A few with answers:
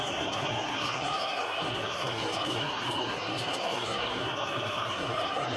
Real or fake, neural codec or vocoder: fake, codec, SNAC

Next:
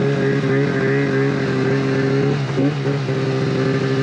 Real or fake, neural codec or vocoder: real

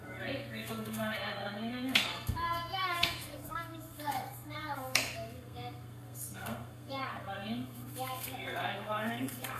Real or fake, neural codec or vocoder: fake, codec, SNAC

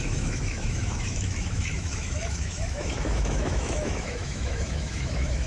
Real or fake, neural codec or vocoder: fake, autoencoder, DAC-VAE